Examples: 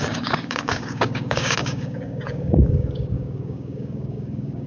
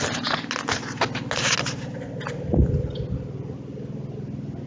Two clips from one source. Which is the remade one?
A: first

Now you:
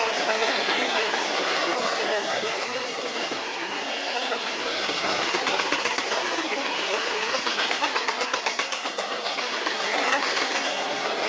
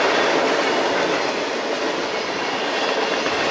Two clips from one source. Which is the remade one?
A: first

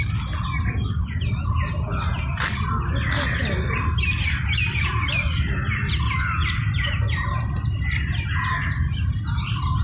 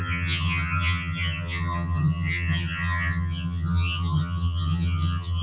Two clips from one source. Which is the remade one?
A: second